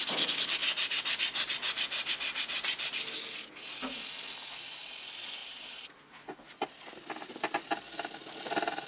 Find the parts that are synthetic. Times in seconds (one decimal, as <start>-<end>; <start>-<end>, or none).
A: 5.4-5.9